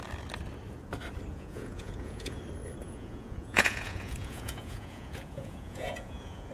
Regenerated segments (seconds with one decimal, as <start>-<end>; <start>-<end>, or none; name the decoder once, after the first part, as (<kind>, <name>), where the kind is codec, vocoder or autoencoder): 1.3-2.4 (vocoder, Vocos); 2.8-6.5